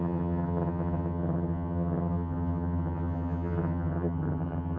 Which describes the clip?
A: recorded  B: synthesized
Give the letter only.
B